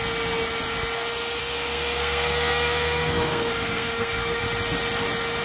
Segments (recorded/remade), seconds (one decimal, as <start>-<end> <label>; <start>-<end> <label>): 0.0-1.4 recorded; 1.4-4.4 remade; 4.4-5.4 recorded